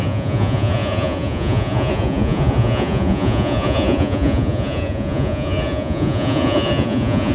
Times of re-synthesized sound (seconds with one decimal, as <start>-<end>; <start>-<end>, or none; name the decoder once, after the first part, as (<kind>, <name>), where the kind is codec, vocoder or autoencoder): 0.0-7.3 (vocoder, Vocos)